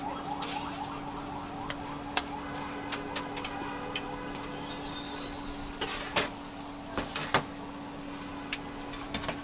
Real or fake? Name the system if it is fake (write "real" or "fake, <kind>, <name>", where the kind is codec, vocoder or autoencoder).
real